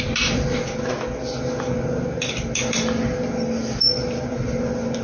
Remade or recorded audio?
recorded